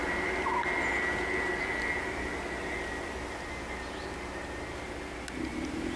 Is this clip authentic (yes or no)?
yes